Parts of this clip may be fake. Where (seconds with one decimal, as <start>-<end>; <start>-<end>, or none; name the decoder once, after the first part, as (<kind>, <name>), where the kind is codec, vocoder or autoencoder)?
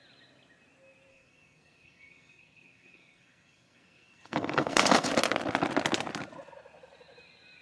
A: 1.1-5.1 (codec, SNAC)